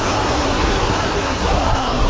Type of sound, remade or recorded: remade